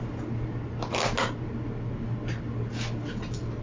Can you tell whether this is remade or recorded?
recorded